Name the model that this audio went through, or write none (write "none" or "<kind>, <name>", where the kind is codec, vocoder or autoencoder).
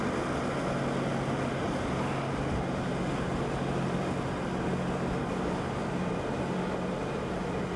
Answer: none